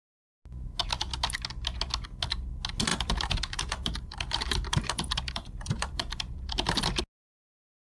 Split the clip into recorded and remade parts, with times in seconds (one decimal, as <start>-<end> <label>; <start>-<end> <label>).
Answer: 0.0-2.9 recorded; 2.9-7.0 remade; 7.0-8.0 recorded